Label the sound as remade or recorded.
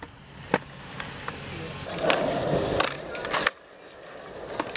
recorded